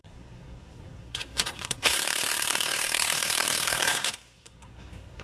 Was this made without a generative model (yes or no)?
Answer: no